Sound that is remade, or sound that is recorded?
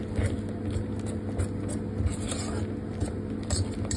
recorded